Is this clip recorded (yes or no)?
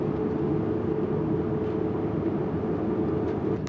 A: yes